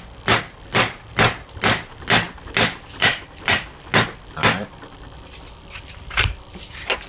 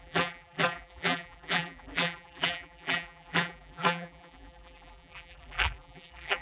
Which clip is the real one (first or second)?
first